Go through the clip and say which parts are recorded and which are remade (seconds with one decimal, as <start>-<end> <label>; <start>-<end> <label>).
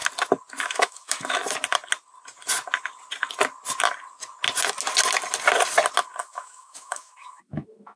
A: 0.0-0.6 recorded; 0.6-1.4 remade; 1.4-6.2 recorded; 6.2-8.0 remade